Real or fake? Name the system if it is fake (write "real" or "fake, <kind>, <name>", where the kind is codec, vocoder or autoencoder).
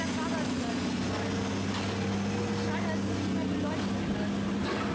real